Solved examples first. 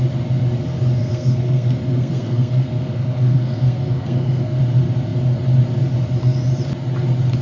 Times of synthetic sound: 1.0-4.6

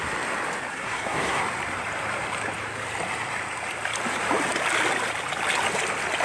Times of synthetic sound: 0.7-1.4